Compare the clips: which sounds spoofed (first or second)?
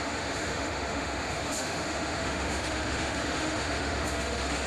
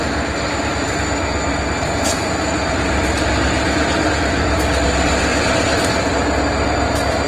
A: first